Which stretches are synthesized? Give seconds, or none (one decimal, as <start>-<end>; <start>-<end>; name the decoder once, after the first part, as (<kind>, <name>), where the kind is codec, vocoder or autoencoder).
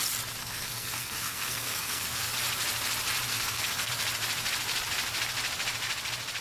0.4-2.3 (codec, SNAC); 3.3-3.9